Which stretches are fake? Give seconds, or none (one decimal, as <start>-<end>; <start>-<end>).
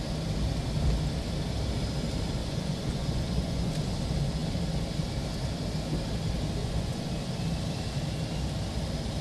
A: 2.4-3.7; 6.6-7.1